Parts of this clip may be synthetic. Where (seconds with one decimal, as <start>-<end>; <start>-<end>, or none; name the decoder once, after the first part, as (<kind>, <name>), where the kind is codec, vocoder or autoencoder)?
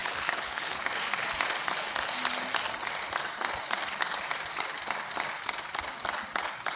0.0-0.8 (codec, HILCodec)